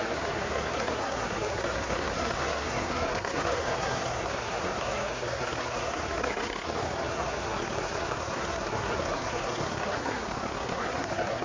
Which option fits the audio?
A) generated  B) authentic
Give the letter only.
A